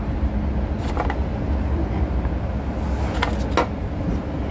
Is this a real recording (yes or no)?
yes